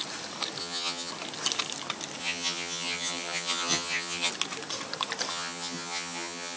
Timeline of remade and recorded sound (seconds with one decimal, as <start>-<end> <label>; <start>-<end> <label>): 0.0-0.6 recorded; 0.6-1.1 remade; 1.1-2.2 recorded; 2.2-4.3 remade; 4.3-5.3 recorded; 5.3-6.6 remade